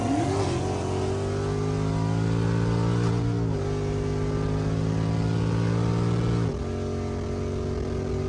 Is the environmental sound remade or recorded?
recorded